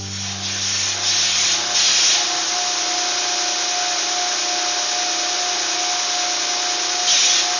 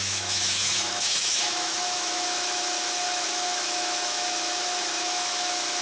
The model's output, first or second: second